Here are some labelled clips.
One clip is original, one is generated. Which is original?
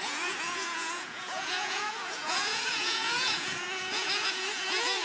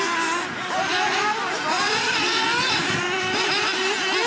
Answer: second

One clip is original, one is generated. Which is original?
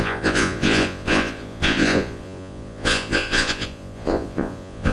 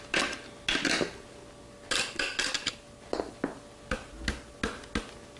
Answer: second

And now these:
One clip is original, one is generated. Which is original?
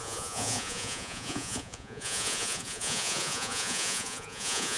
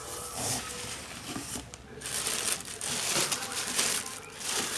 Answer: second